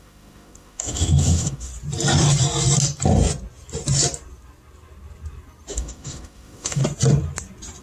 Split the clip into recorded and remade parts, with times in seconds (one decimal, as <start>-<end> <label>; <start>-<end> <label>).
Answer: 0.0-1.7 remade; 1.7-5.7 recorded; 5.7-6.8 remade; 6.8-7.8 recorded